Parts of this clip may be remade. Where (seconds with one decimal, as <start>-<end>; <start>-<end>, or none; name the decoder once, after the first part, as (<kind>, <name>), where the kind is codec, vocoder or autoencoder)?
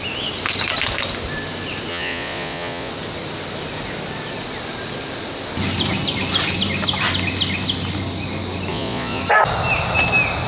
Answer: 1.9-2.9 (vocoder, Vocos); 8.7-9.2